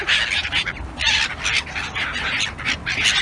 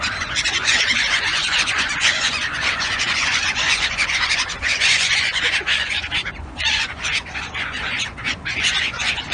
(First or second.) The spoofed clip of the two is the second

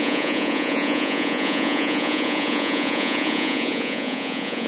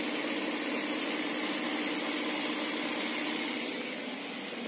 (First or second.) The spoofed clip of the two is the first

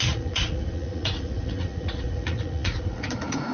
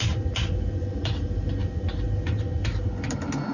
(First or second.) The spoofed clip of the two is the first